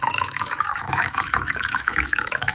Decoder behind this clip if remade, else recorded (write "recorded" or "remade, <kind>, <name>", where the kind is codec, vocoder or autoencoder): remade, autoencoder, DAC-VAE